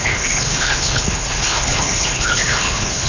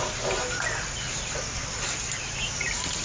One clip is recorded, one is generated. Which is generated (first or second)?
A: first